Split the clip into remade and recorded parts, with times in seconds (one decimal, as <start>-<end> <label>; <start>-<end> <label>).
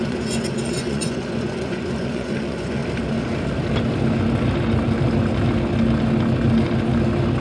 0.0-2.8 remade; 2.8-7.4 recorded